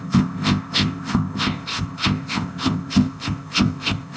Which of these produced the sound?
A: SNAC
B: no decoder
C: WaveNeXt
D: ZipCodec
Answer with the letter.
D